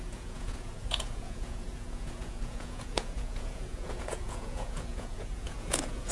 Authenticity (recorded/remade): remade